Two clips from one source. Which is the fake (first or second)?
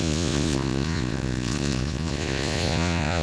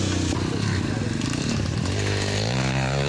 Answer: first